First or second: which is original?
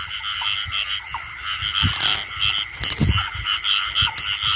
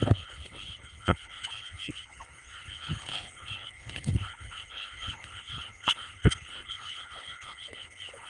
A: first